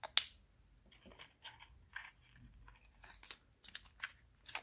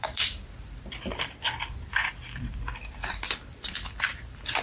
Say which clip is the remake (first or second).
second